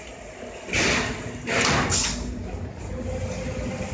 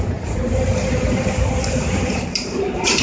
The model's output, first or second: second